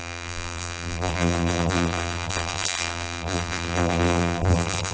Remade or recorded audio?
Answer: remade